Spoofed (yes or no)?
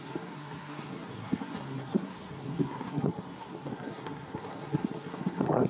yes